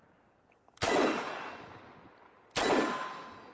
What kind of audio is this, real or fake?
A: real